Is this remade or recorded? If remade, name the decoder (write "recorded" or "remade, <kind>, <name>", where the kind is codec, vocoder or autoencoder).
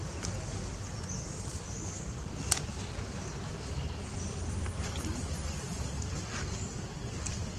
recorded